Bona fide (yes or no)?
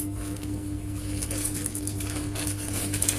no